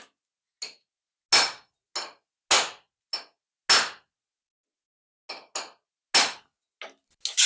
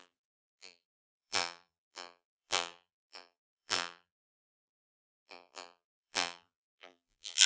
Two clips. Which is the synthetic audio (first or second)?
second